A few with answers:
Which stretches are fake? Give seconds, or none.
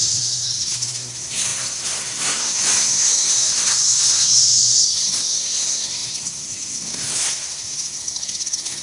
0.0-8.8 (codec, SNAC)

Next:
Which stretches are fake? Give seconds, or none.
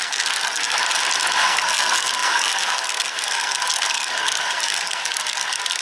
0.0-0.8 (codec, SNAC); 1.4-5.8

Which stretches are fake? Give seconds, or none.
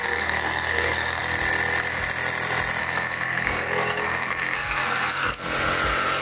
0.0-1.2 (codec, SNAC); 2.8-5.4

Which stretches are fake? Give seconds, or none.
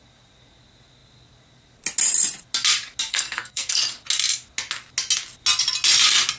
3.1-3.8 (codec, SNAC)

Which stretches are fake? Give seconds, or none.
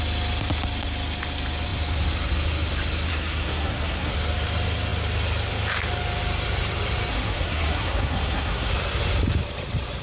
3.1-4.1 (codec, SNAC); 7.1-8.7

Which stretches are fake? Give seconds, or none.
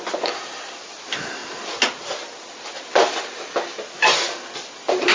none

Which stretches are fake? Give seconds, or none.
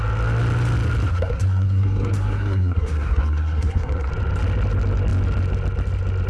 1.1-4.1 (codec, SNAC)